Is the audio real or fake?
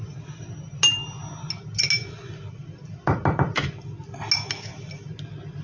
real